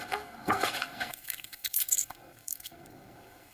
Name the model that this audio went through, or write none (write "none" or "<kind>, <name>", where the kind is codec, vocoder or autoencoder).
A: codec, SNAC